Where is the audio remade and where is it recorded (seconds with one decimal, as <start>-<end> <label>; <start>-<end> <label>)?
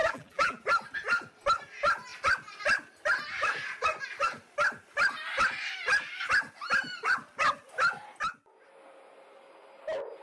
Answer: 0.0-0.6 remade; 0.6-10.2 recorded